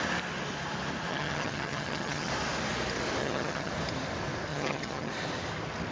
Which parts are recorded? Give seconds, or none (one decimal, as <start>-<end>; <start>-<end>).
0.0-1.1; 2.3-3.2; 3.7-4.5; 5.1-5.9